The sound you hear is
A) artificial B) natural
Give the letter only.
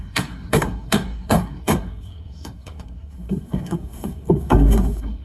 A